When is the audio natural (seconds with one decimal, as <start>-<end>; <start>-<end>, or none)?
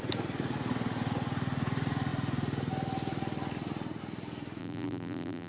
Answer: 0.0-4.6